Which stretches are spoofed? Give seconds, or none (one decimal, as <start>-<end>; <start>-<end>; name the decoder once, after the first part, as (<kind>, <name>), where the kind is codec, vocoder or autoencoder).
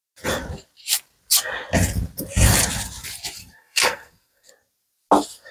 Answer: 3.4-4.5 (codec, SNAC)